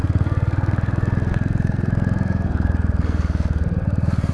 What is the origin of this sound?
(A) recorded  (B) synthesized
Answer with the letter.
B